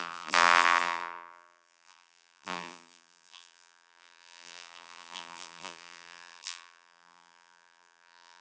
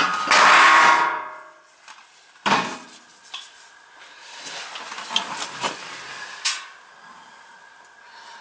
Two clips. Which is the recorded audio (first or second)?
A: second